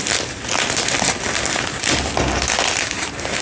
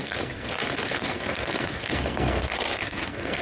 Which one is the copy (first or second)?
second